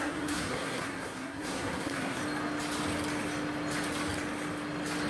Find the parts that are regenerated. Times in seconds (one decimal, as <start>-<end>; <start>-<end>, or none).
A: 0.0-2.2